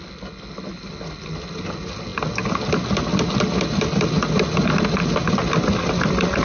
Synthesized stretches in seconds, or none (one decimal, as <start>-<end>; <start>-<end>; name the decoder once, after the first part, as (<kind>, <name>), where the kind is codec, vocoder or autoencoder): none